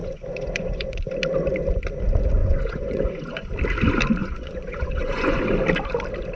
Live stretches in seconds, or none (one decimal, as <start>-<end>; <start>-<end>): 1.0-2.4; 3.5-4.2; 5.4-6.4